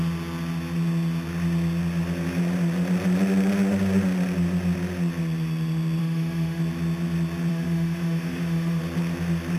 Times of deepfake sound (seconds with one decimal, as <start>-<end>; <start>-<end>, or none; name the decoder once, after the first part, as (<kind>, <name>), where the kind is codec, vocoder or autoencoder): 6.0-6.6 (autoencoder, DAC-VAE); 7.5-8.8